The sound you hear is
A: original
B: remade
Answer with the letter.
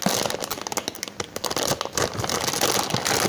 A